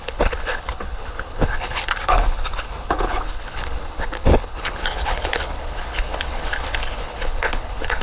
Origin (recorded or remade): remade